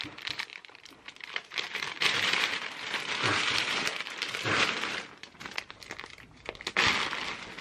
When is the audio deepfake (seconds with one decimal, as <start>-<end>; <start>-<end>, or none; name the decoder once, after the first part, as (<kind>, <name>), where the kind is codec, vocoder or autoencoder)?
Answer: 0.5-5.1 (vocoder, BigVGAN v2)